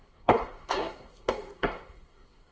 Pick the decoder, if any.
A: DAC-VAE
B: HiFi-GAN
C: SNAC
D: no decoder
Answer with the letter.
C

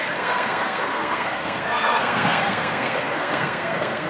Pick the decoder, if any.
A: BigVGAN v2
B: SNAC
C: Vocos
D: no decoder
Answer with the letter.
B